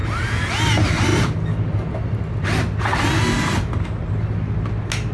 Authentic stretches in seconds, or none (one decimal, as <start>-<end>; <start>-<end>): 0.0-5.1